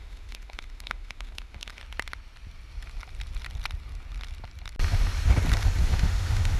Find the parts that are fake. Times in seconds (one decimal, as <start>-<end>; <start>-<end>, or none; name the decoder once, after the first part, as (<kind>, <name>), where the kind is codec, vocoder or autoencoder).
0.0-1.8 (autoencoder, DAC-VAE); 5.8-6.6